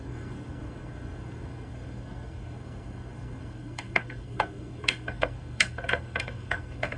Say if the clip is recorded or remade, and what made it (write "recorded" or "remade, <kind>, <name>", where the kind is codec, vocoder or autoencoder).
remade, codec, SNAC